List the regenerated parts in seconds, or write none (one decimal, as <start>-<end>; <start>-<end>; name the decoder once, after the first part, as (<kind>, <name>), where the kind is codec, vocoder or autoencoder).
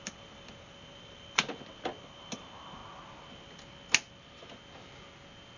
0.0-2.8 (vocoder, BigVGAN v2)